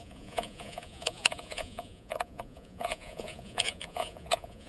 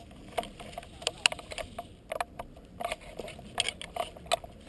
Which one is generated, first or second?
first